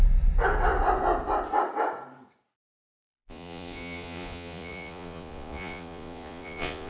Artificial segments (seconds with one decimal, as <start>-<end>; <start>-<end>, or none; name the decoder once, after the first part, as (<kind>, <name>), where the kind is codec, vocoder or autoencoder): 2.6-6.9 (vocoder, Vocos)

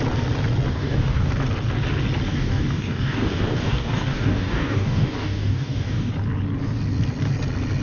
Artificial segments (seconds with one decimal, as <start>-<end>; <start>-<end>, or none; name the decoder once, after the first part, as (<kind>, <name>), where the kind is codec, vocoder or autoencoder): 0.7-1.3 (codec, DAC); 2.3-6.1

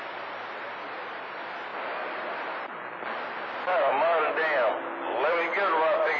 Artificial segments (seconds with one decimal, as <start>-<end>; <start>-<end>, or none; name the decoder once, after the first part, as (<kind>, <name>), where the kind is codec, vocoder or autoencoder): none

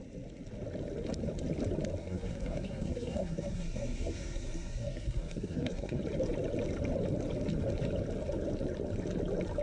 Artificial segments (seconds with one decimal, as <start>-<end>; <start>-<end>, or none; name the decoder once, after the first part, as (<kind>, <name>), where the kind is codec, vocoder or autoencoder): 2.0-6.0 (codec, SNAC)

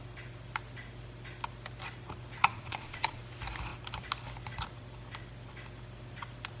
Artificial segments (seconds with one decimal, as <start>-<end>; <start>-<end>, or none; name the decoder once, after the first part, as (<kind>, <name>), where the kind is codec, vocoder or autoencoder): 2.4-3.2 (vocoder, Vocos)

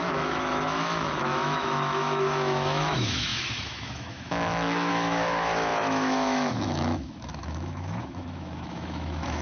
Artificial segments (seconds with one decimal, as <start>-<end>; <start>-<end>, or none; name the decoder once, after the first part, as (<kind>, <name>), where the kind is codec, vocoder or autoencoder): 0.0-9.4 (autoencoder, DAC-VAE)